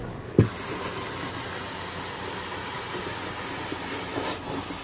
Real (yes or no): yes